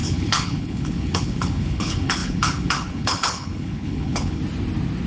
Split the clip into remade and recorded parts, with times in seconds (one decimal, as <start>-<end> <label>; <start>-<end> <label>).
0.0-4.4 remade; 4.4-5.1 recorded